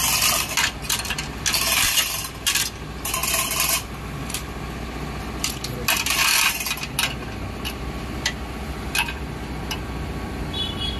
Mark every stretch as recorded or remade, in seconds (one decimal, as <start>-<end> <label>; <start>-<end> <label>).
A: 0.0-11.0 recorded